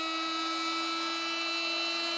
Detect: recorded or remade recorded